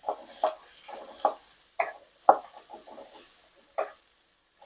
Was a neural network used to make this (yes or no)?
no